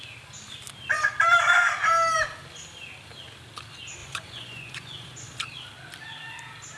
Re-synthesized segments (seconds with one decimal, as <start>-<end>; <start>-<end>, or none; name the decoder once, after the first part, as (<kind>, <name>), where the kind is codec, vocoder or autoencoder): 4.0-5.4 (vocoder, Vocos)